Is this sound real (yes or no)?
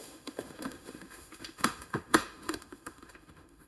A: no